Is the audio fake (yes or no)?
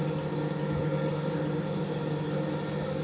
no